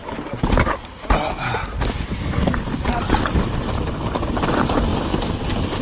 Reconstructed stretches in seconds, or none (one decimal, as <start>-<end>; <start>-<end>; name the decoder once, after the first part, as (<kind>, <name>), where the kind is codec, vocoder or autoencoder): 0.0-5.8 (vocoder, BigVGAN v2)